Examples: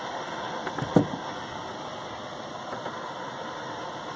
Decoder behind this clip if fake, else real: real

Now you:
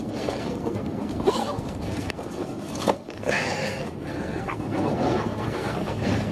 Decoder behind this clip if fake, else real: fake, codec, SNAC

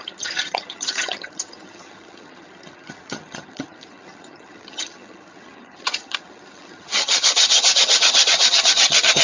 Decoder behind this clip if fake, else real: fake, vocoder, HiFi-GAN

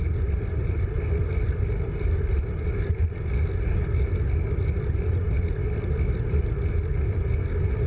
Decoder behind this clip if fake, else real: real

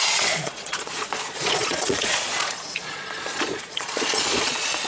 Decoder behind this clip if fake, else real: fake, vocoder, Vocos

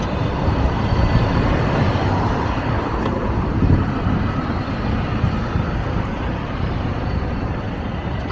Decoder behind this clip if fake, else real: fake, vocoder, BigVGAN v2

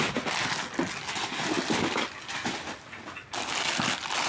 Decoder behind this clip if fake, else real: real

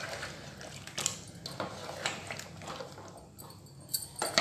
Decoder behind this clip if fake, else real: real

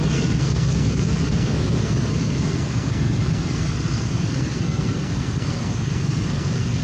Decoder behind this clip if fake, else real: fake, codec, SNAC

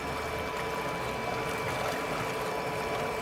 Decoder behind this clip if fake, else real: real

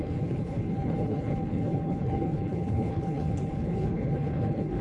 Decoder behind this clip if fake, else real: fake, codec, HILCodec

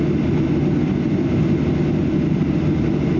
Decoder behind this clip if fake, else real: real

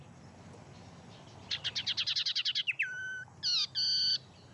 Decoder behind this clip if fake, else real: real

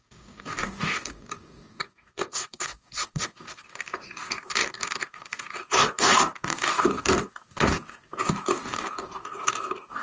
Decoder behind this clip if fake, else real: fake, codec, DAC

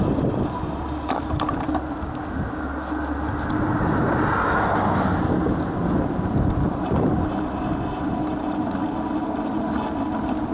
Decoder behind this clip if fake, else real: real